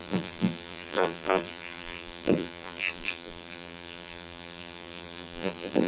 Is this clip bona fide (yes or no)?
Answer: no